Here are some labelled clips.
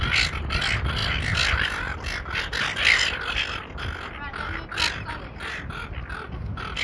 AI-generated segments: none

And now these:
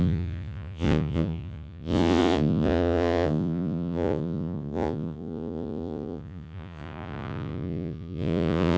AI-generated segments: 0.0-8.8 (vocoder, Vocos)

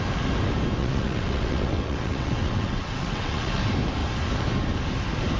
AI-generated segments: 0.8-3.6 (vocoder, WaveNeXt)

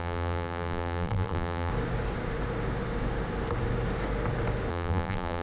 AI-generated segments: 0.0-1.7 (vocoder, BigVGAN v2); 4.7-5.4

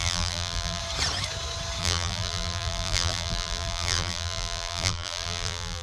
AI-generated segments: 0.0-0.8 (vocoder, BigVGAN v2); 1.8-5.8

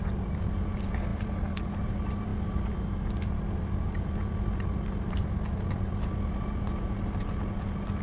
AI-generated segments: none

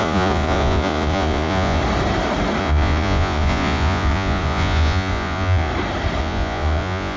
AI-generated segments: 0.0-1.8 (vocoder, Vocos); 2.6-5.7; 6.2-7.2